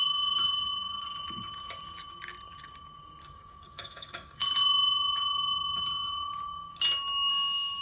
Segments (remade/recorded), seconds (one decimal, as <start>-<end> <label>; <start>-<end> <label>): 0.0-0.7 remade; 0.7-3.3 recorded; 3.3-4.4 remade; 4.4-7.3 recorded; 7.3-7.8 remade